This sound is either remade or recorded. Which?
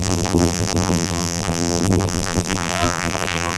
remade